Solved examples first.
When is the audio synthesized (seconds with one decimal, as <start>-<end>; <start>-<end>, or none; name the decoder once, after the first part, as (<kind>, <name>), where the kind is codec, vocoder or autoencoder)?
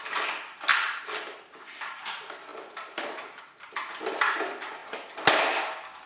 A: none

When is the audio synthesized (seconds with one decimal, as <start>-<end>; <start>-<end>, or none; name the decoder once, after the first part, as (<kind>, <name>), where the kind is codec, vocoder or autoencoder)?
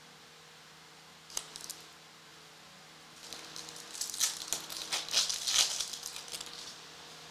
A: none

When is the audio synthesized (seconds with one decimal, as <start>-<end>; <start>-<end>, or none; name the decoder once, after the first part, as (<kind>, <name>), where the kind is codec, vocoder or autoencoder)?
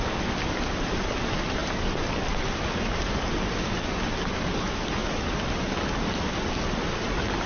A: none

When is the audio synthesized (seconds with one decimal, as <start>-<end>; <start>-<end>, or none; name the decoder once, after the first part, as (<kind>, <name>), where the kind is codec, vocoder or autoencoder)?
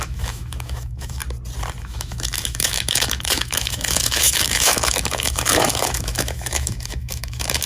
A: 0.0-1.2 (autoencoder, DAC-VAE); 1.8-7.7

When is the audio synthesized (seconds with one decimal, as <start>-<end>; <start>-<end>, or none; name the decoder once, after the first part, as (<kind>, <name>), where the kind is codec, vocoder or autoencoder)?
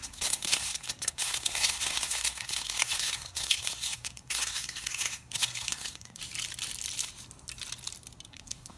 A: 0.0-6.2 (codec, SNAC); 8.3-8.8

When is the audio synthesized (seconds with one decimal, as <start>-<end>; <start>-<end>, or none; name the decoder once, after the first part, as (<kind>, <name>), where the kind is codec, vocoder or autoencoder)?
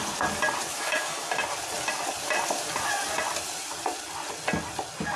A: 0.7-1.3 (autoencoder, DAC-VAE)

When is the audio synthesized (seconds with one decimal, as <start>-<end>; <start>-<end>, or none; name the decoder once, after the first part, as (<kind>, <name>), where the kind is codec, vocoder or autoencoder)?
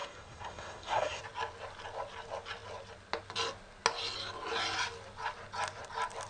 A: 0.0-1.2 (codec, SNAC)